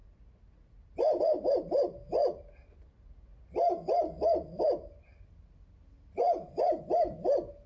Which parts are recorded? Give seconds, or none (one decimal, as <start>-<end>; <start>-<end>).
0.0-7.7